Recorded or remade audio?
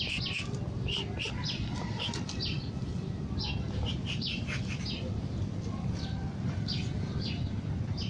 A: recorded